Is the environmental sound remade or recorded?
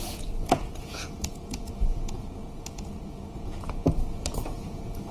remade